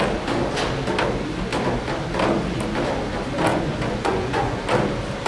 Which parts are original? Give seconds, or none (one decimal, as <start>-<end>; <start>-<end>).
0.0-3.5; 4.6-5.3